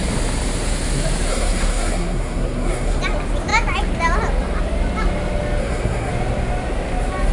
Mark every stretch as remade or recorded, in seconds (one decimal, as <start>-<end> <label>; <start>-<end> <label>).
0.0-1.3 recorded; 1.3-3.0 remade; 3.0-5.6 recorded; 5.6-6.1 remade; 6.1-7.3 recorded